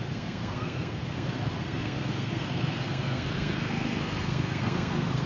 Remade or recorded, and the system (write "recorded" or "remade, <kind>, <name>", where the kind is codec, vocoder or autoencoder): remade, codec, SNAC